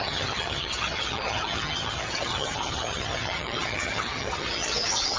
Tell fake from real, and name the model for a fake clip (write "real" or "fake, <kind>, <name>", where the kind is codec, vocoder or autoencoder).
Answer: fake, vocoder, HiFi-GAN